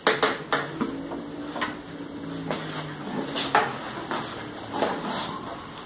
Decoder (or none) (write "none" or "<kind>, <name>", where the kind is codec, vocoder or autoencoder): none